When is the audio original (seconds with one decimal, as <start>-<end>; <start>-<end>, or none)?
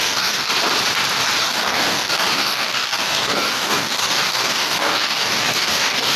0.5-1.4